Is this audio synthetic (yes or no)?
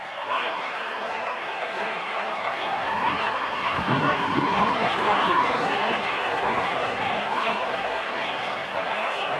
yes